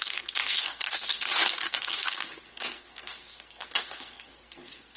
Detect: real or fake fake